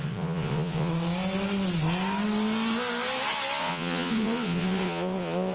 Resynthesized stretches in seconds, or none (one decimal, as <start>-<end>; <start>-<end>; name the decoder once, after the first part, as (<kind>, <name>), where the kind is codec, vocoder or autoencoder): 0.0-0.9 (vocoder, Vocos); 3.6-5.5